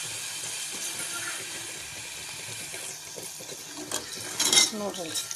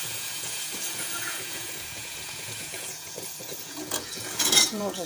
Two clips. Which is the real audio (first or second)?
first